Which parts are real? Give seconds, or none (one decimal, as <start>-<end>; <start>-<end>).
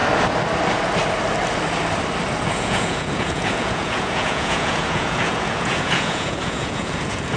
0.0-2.5